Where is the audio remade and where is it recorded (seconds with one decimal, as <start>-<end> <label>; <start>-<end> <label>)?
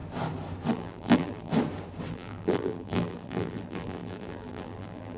0.0-0.7 recorded; 0.7-1.5 remade; 1.5-2.1 recorded; 2.1-5.2 remade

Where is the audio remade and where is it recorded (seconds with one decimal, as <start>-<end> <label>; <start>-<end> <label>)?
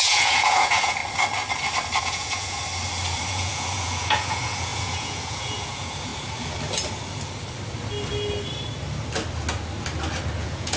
0.0-1.0 remade; 1.0-2.0 recorded; 2.0-2.6 remade; 2.6-3.3 recorded; 3.3-6.1 remade; 6.1-10.4 recorded; 10.4-10.8 remade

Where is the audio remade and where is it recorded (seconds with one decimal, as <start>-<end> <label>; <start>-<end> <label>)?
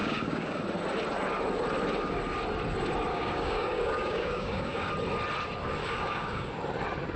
0.0-0.6 remade; 0.6-3.1 recorded; 3.1-4.9 remade; 4.9-5.8 recorded; 5.8-6.5 remade; 6.5-7.2 recorded